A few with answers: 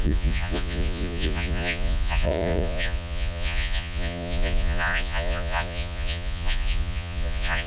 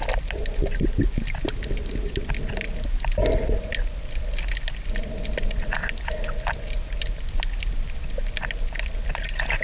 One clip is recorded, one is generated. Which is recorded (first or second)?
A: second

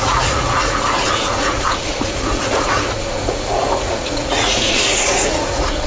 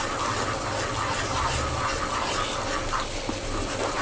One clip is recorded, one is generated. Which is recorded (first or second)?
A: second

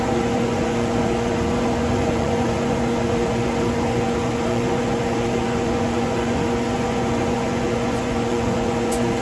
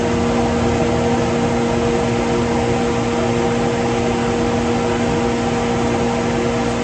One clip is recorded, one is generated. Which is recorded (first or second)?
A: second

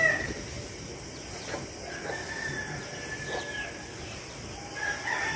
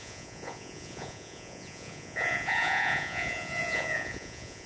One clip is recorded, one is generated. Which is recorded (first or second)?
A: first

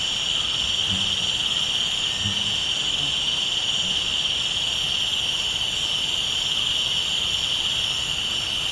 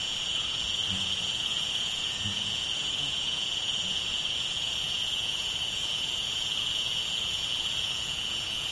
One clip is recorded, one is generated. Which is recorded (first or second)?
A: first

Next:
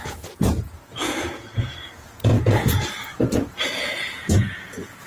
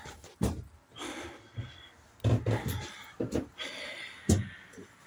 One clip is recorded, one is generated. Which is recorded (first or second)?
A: second